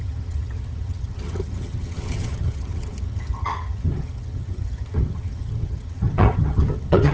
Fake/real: fake